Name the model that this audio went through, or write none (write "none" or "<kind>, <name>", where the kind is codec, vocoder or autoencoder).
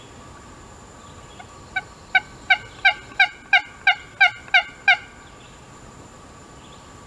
none